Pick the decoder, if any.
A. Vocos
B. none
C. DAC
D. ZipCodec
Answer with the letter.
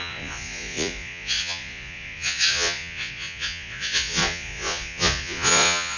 A